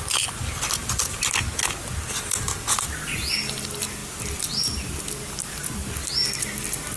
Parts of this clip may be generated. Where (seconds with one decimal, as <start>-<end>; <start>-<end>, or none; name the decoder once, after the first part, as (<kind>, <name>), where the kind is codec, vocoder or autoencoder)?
none